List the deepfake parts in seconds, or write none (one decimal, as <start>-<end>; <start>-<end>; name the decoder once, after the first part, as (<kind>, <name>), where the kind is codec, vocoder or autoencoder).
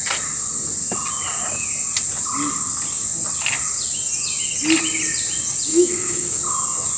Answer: 5.7-6.4 (autoencoder, DAC-VAE)